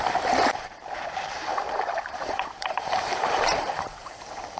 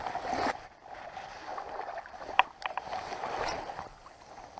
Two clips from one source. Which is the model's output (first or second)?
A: first